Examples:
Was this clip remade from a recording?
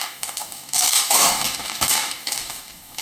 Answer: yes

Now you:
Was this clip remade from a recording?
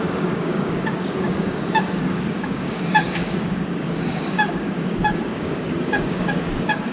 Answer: yes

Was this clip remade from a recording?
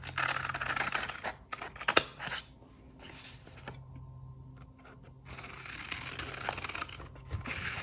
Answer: no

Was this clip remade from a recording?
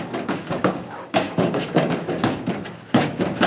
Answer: yes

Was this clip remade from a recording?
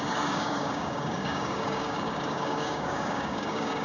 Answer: yes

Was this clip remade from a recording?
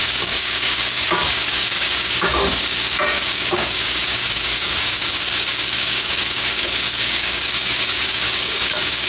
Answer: yes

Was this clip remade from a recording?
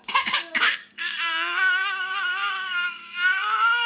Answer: yes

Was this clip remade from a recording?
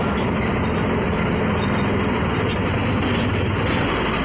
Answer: no